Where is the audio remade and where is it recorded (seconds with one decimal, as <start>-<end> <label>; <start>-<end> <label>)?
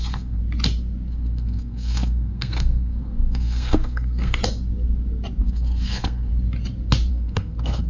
0.0-0.4 remade; 0.4-1.1 recorded; 1.1-4.4 remade; 4.4-5.4 recorded; 5.4-6.3 remade; 6.3-7.1 recorded; 7.1-7.9 remade